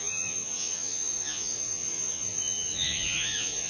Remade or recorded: remade